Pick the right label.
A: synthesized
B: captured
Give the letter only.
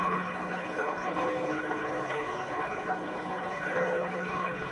A